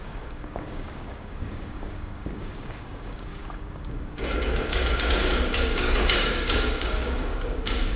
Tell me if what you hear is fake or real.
fake